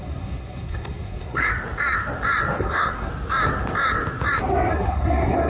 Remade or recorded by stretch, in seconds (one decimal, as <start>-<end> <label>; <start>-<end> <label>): 0.0-1.5 remade; 1.5-2.6 recorded; 2.6-3.1 remade; 3.1-4.7 recorded; 4.7-5.5 remade